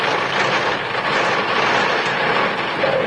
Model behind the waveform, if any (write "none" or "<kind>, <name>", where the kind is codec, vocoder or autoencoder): none